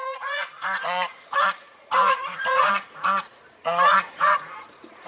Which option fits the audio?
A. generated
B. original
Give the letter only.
A